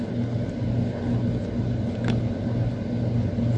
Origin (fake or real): real